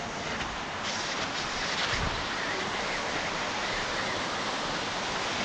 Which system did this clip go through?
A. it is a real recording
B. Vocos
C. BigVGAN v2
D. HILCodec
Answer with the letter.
C